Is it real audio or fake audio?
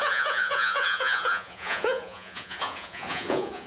fake